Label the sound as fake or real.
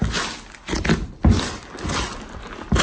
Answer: real